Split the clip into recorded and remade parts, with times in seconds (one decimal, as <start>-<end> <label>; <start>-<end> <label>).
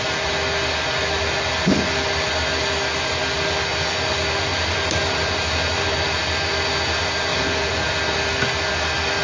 0.0-7.3 recorded; 7.3-7.9 remade; 7.9-9.2 recorded